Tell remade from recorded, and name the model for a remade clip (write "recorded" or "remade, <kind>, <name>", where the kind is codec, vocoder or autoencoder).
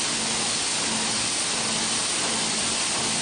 recorded